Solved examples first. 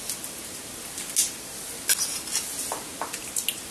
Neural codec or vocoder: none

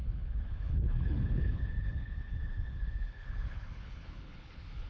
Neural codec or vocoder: codec, HILCodec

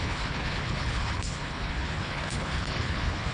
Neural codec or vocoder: codec, HILCodec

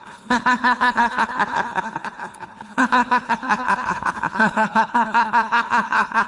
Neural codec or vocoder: codec, HILCodec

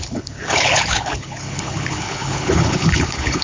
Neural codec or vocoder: codec, HILCodec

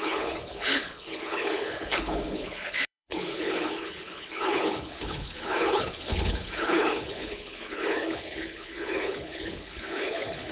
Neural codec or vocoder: codec, HILCodec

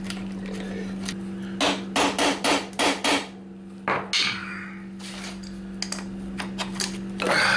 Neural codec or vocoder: none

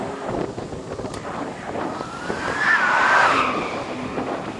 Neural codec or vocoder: none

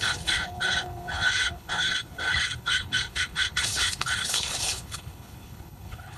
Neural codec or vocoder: codec, HILCodec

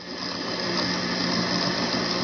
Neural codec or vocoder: none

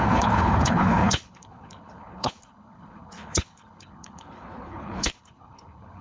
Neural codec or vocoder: codec, HILCodec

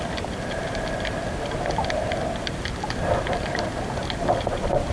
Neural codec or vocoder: none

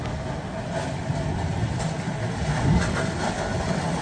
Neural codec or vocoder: none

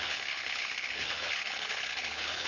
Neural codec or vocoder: codec, HILCodec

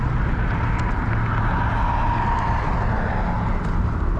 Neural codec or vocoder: none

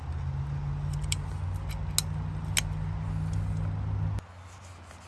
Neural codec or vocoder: none